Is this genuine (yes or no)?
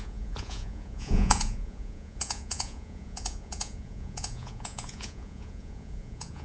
no